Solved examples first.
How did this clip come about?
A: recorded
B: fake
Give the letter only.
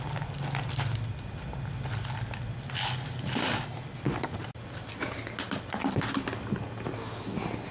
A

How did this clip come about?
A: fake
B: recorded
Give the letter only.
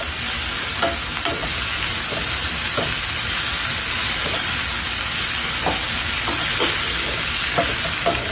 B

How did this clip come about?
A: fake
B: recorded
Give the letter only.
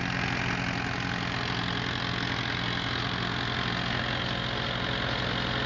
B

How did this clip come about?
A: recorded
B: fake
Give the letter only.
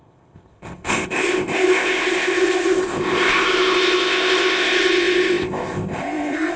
B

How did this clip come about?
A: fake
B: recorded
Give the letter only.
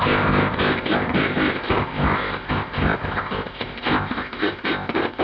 A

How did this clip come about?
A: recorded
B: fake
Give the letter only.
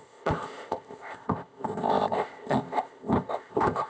B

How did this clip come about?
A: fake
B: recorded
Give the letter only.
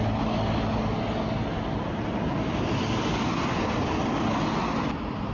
B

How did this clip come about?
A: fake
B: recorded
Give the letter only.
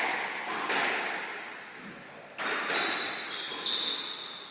B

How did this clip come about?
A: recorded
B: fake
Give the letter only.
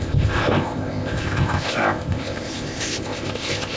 B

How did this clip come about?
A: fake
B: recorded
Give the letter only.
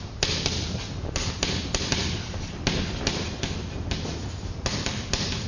B